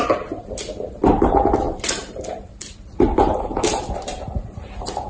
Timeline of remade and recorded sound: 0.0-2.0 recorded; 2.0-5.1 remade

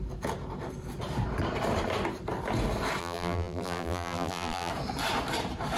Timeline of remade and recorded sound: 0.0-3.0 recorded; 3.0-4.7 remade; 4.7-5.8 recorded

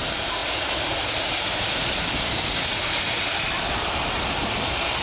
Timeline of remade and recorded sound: 0.0-5.0 recorded